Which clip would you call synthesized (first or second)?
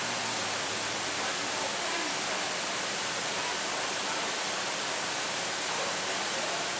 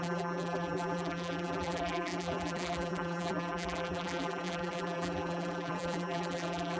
second